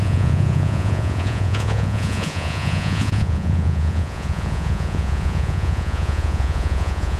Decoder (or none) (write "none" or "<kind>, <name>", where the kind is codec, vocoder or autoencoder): vocoder, Vocos